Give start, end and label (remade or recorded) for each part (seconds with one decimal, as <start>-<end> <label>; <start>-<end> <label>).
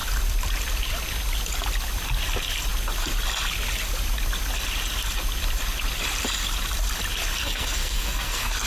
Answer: 0.0-7.4 recorded; 7.4-8.7 remade